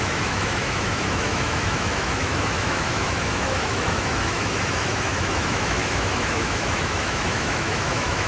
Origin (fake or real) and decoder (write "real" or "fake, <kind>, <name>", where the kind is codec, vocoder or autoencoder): fake, autoencoder, DAC-VAE